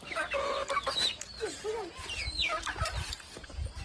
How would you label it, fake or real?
real